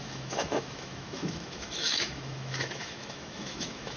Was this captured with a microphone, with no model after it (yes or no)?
no